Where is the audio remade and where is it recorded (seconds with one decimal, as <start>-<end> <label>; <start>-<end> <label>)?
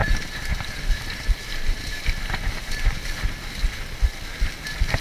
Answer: 0.0-3.0 remade; 3.0-5.0 recorded